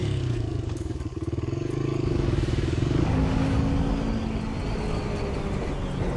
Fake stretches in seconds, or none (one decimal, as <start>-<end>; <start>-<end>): 0.0-3.7